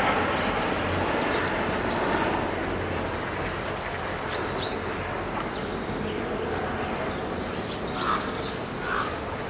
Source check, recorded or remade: recorded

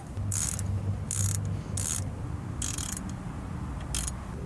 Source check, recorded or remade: recorded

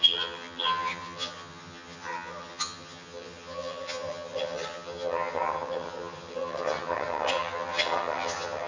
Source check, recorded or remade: remade